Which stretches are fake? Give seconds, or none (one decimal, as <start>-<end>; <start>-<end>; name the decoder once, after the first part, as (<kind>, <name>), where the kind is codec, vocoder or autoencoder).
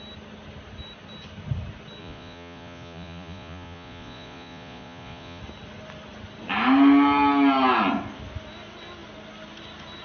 2.0-5.4 (vocoder, Vocos)